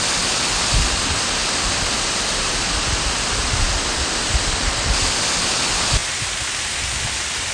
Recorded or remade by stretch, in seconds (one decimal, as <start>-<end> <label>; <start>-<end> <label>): 0.0-7.5 recorded